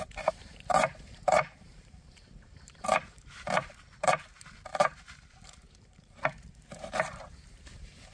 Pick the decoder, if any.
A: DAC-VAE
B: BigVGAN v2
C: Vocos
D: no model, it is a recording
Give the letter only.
B